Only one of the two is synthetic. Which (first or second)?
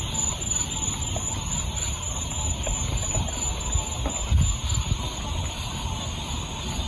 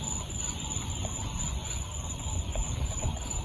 second